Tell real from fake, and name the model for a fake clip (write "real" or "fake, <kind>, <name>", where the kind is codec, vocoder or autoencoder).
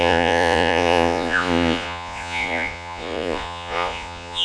fake, vocoder, Vocos